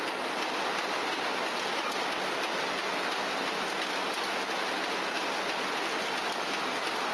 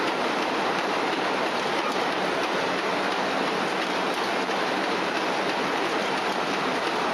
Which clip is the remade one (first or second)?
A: second